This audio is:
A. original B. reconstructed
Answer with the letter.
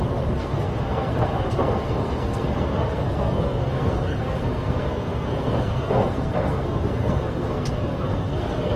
B